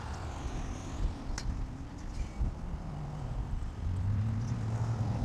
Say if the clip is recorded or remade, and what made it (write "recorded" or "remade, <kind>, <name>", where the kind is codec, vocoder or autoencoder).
recorded